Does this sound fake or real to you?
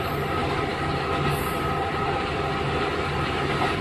real